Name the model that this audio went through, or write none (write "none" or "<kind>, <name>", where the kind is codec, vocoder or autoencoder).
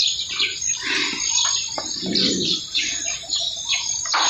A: none